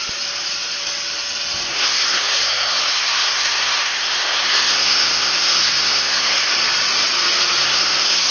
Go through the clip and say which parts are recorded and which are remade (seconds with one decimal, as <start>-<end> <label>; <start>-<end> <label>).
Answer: 0.0-1.7 recorded; 1.7-6.5 remade; 6.5-7.6 recorded; 7.6-8.3 remade